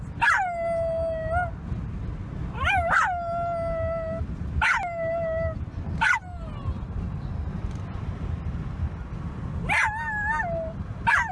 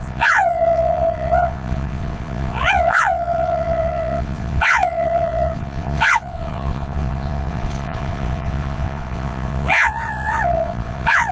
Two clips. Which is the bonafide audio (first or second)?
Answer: first